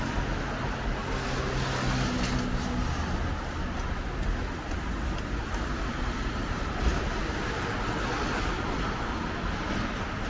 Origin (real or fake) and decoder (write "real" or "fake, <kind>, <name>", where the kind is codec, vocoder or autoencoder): real